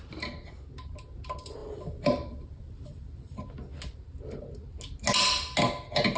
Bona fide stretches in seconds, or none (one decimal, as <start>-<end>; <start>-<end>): 0.0-1.6; 3.4-6.2